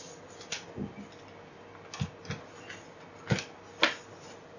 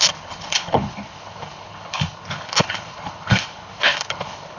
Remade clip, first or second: second